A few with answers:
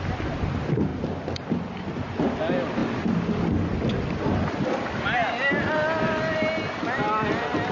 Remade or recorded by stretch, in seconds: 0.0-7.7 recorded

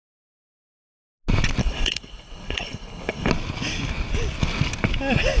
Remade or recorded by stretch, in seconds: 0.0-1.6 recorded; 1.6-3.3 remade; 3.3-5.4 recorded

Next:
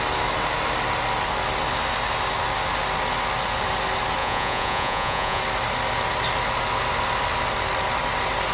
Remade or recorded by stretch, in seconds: 0.0-4.2 recorded; 4.2-5.4 remade; 5.4-8.5 recorded